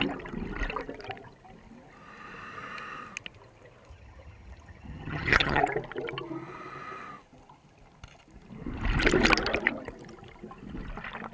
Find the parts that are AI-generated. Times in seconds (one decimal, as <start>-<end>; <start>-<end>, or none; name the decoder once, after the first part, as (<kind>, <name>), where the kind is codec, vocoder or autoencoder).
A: 3.9-5.6 (vocoder, HiFi-GAN)